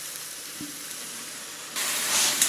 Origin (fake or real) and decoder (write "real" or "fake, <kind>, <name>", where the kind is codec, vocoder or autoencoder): fake, vocoder, BigVGAN v2